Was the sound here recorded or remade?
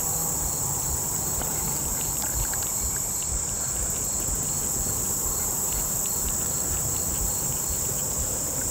remade